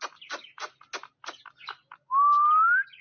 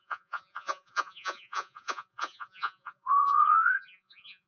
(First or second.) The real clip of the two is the first